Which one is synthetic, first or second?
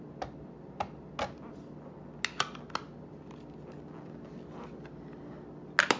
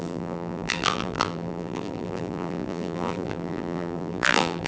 second